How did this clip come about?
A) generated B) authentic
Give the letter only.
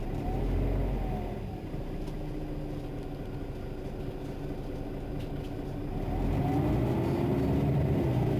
B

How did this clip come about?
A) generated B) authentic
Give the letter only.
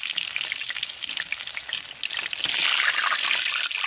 B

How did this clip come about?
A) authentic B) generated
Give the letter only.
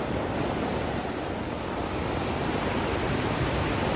A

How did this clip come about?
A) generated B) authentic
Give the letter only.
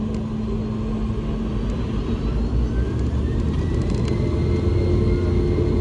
B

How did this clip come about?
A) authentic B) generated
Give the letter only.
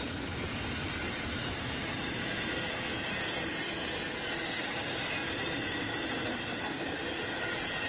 A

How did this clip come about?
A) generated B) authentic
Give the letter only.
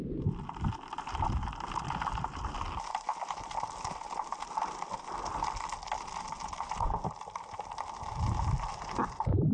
A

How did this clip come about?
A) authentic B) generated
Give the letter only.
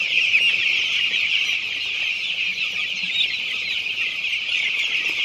A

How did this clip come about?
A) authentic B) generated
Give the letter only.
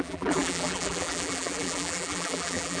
B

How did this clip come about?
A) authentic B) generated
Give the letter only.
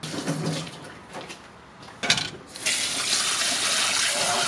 A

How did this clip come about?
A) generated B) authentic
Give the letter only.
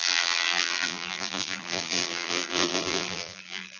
A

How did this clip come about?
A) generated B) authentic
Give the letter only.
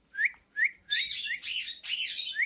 A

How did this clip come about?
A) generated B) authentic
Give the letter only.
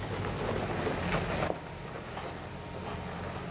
B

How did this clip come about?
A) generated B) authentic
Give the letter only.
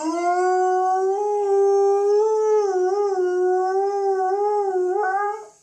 B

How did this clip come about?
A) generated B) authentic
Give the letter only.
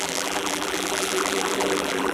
A